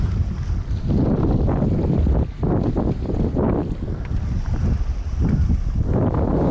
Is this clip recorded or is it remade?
recorded